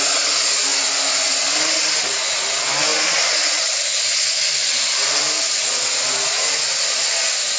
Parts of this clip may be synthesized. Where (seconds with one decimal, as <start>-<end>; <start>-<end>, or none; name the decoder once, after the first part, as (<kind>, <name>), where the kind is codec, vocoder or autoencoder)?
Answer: none